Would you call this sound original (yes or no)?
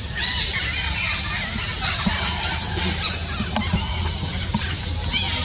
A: yes